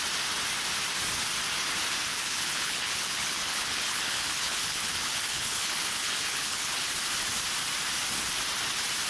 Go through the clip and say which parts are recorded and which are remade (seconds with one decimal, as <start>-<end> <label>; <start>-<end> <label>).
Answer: 0.0-2.1 recorded; 2.1-6.9 remade; 6.9-9.1 recorded